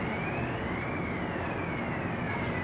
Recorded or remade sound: recorded